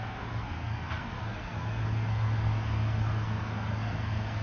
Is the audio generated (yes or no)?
yes